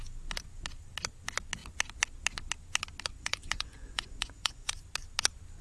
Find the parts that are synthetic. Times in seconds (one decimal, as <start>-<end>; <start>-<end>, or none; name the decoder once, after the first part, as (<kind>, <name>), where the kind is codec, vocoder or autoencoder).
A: 3.2-4.7 (vocoder, Vocos)

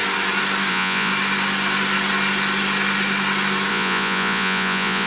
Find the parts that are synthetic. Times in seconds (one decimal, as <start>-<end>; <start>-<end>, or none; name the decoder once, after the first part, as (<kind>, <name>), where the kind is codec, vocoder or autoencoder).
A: 0.7-1.1 (vocoder, Vocos); 3.7-5.1

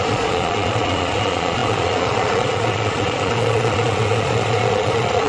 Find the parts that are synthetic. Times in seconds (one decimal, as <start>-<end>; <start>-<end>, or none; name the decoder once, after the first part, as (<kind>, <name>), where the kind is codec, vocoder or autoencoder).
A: 0.0-5.3 (vocoder, Vocos)

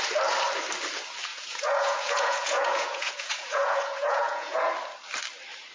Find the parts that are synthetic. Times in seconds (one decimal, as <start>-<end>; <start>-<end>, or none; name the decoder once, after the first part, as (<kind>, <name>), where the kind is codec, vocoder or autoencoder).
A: 1.3-4.7 (vocoder, Vocos)

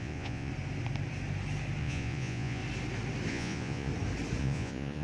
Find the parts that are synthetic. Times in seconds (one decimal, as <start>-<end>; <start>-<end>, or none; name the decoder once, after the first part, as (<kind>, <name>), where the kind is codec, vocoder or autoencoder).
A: 0.0-0.5 (vocoder, Vocos); 1.8-2.6; 3.3-3.9; 4.4-5.0

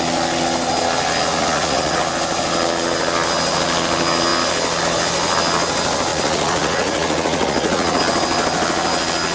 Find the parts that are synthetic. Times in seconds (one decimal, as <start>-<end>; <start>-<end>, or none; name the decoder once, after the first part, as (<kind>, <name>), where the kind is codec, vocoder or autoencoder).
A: 1.3-2.0 (vocoder, Vocos); 6.1-8.0